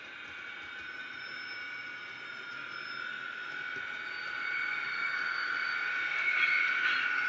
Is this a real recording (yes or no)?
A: yes